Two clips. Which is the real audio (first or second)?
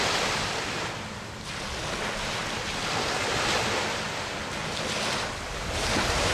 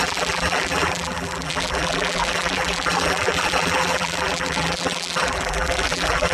first